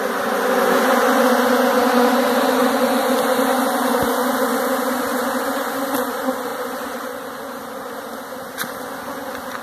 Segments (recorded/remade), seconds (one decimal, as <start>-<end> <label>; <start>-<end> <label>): 0.0-9.6 recorded